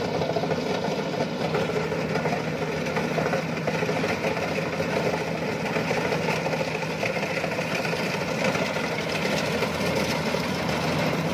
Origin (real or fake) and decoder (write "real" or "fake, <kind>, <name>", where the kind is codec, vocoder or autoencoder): real